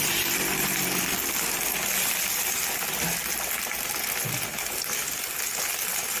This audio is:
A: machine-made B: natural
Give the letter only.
B